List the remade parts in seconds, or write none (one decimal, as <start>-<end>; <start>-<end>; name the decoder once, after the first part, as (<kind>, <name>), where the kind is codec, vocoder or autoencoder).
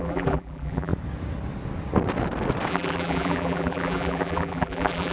0.0-0.9 (vocoder, BigVGAN v2); 2.7-5.1